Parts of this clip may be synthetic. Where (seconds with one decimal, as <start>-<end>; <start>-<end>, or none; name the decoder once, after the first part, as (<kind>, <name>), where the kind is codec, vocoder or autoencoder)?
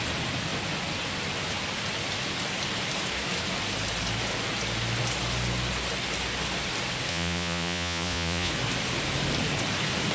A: 7.1-8.5 (vocoder, Vocos)